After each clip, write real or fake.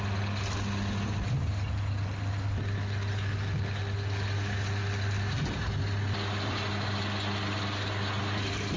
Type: real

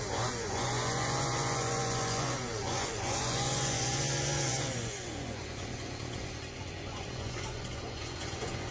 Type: fake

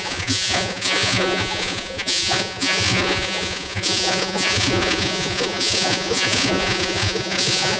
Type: fake